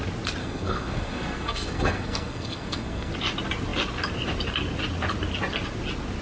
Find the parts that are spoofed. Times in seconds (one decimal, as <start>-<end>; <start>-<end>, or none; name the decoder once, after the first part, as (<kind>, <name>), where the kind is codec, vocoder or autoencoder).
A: 0.4-3.1 (codec, SNAC)